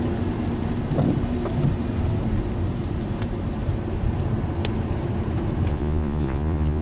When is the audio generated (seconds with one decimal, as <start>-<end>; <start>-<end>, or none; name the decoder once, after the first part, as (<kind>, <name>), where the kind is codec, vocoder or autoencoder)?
5.7-6.8 (vocoder, Vocos)